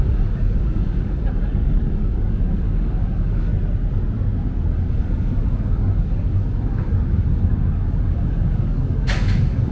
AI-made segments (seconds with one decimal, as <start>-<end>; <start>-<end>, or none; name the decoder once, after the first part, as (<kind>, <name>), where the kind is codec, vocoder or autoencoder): 0.0-3.5 (codec, DAC); 4.9-9.7